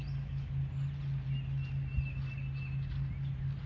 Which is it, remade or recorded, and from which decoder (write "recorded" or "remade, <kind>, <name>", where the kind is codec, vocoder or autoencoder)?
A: recorded